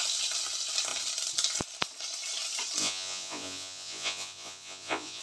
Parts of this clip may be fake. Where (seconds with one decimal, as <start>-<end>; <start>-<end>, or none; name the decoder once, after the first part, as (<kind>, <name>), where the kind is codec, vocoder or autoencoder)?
2.8-5.2 (vocoder, Vocos)